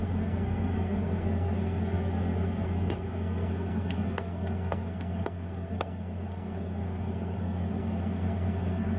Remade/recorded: remade